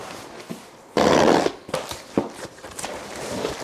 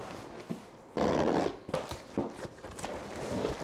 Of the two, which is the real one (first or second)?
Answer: second